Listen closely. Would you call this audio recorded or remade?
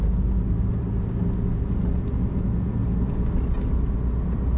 recorded